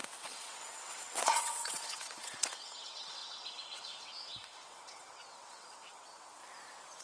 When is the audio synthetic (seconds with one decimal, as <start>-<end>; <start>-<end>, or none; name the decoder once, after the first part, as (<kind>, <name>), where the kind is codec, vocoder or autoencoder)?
0.0-6.4 (vocoder, WaveNeXt)